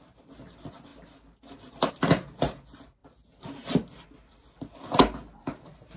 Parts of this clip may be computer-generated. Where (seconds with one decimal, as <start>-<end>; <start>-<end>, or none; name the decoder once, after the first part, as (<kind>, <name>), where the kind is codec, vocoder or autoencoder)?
none